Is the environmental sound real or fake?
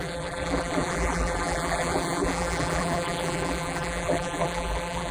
fake